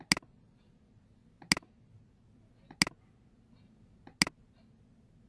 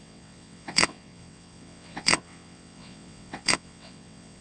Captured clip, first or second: first